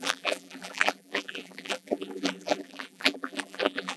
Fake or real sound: fake